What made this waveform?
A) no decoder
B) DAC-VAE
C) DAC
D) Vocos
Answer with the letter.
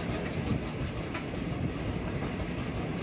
A